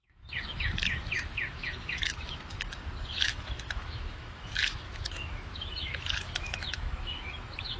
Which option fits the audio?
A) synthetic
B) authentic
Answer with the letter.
A